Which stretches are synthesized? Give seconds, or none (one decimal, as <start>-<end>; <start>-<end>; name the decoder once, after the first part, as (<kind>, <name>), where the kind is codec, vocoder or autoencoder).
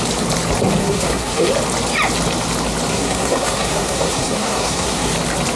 0.8-1.5 (codec, SNAC); 2.9-5.1